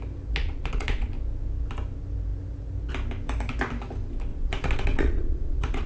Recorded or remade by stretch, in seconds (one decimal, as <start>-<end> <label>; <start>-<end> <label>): 0.0-0.4 recorded; 0.4-1.1 remade; 1.1-4.3 recorded; 4.3-5.9 remade